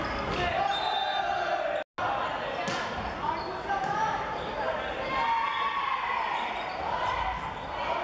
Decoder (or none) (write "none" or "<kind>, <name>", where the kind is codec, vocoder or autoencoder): none